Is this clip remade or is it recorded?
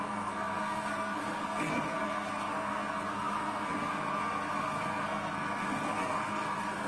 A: remade